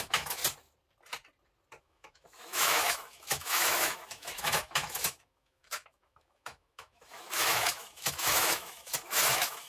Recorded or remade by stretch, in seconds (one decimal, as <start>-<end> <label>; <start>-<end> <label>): 0.0-0.4 remade; 0.4-1.8 recorded; 1.8-9.7 remade

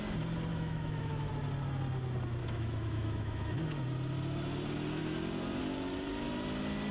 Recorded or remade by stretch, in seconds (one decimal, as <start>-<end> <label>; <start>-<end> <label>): 0.0-0.5 recorded; 0.5-1.3 remade; 1.3-2.4 recorded; 2.4-3.6 remade; 3.6-6.9 recorded

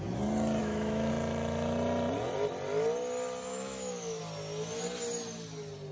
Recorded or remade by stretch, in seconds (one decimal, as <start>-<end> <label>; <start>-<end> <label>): 0.0-0.6 recorded; 0.6-1.1 remade; 1.1-3.5 recorded; 3.5-4.2 remade; 4.2-5.9 recorded

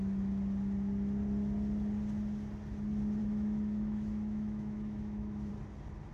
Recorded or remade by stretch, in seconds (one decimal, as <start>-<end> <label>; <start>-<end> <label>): 0.0-3.2 recorded; 3.2-5.5 remade; 5.5-6.1 recorded

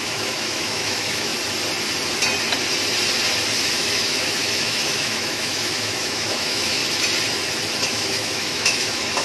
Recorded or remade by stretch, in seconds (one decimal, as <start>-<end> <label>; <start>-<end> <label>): 0.0-1.3 remade; 1.3-3.6 recorded; 3.6-6.8 remade; 6.8-7.9 recorded; 7.9-9.2 remade

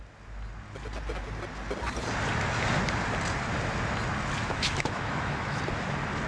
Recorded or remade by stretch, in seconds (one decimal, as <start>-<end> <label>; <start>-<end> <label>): 0.0-4.4 recorded; 4.4-5.6 remade; 5.6-6.3 recorded